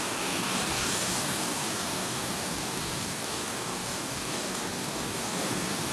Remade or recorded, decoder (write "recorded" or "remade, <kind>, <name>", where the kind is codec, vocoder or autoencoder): remade, codec, DAC